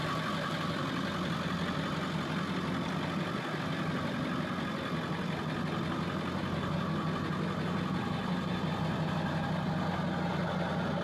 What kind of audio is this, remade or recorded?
recorded